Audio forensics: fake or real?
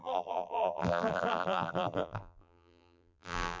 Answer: fake